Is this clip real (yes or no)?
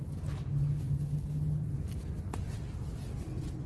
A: yes